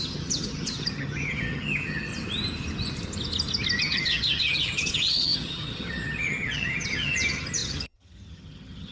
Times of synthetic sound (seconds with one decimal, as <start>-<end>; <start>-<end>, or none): 0.0-2.1; 3.8-8.9